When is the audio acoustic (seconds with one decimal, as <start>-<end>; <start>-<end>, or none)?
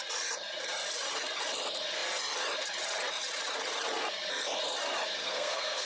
0.0-5.2